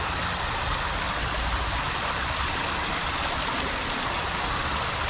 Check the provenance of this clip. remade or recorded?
recorded